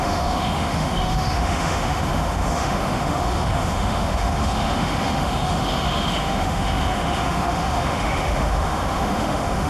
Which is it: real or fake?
fake